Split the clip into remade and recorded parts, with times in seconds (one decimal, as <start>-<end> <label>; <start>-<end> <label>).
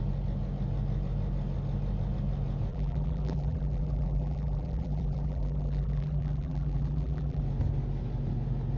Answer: 0.0-2.7 recorded; 2.7-7.4 remade; 7.4-8.8 recorded